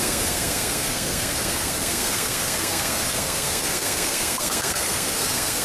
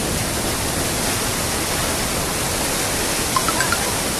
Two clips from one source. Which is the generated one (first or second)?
first